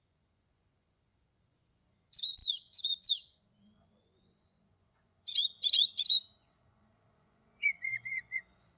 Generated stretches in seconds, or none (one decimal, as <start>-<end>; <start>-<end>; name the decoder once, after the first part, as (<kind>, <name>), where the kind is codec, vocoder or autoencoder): 0.0-8.8 (vocoder, Vocos)